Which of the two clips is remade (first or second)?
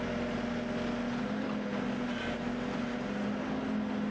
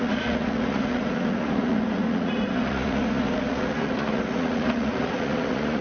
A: second